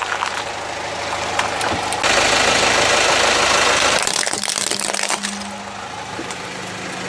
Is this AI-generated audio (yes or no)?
no